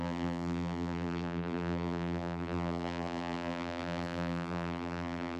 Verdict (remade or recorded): remade